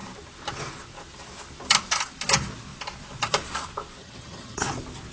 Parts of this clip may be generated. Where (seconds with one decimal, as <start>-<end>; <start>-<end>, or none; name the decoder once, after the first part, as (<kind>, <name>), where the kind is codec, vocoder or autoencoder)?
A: 4.0-4.6 (vocoder, HiFi-GAN)